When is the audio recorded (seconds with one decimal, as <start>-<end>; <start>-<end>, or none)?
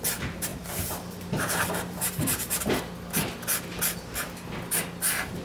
0.0-0.5; 2.8-5.4